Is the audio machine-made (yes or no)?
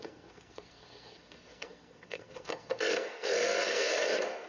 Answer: yes